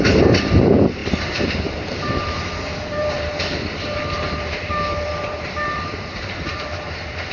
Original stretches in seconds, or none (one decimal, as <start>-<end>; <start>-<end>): none